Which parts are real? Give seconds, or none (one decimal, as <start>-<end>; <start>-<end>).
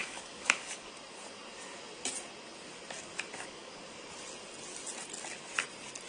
0.9-3.3; 3.8-6.1